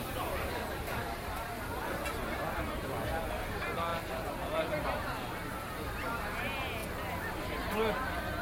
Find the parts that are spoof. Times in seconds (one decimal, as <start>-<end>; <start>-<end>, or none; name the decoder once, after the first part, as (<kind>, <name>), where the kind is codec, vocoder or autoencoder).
1.0-1.8 (vocoder, BigVGAN v2); 3.9-4.7